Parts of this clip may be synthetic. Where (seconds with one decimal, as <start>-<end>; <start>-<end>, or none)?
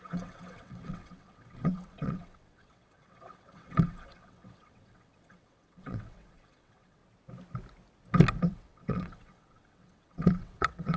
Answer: 0.0-7.0; 8.4-11.0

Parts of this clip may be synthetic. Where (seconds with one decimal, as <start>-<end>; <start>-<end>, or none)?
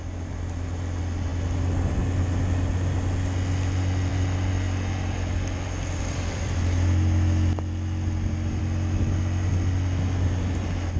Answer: none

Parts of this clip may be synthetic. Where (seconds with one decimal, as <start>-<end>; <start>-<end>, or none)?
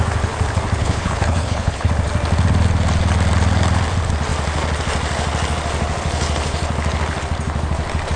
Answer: 0.8-1.9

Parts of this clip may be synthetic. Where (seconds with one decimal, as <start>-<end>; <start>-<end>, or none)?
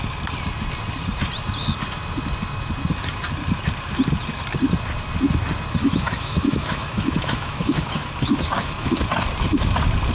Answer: 5.8-8.9